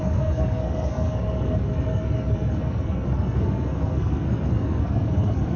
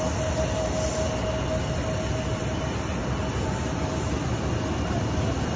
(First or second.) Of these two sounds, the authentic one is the second